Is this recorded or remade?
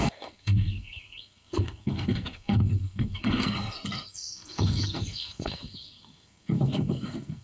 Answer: remade